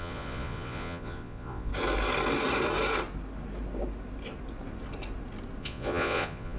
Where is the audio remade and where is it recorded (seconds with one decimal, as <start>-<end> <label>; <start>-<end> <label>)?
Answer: 0.0-1.7 remade; 1.7-5.6 recorded; 5.6-6.6 remade